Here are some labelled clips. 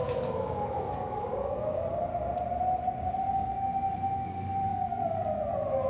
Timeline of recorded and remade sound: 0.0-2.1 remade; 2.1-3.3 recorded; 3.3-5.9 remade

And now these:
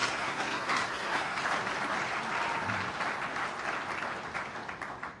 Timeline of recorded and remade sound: 0.0-1.4 remade; 1.4-5.2 recorded

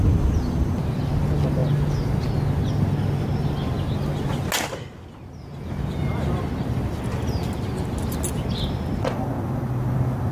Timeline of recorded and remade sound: 0.0-10.3 recorded

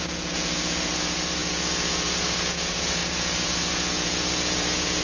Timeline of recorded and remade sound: 0.0-5.0 remade